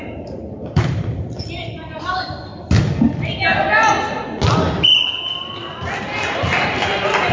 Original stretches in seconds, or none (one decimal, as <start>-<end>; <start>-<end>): 2.5-7.3